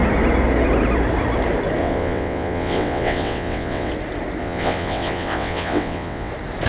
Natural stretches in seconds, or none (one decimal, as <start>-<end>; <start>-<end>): 0.0-1.8; 3.9-4.4; 6.3-6.7